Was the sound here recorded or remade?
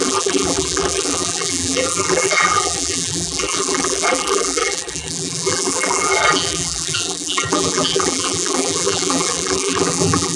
remade